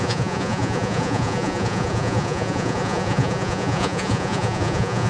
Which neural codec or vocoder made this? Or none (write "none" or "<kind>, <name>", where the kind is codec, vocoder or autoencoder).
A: vocoder, Vocos